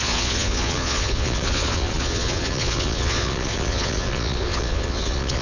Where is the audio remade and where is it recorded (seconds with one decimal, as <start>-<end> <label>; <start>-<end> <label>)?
0.0-5.4 remade